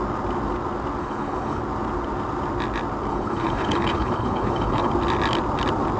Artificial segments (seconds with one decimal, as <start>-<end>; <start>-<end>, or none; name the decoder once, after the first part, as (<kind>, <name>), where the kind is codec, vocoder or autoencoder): 1.0-1.6 (codec, HILCodec); 3.1-4.9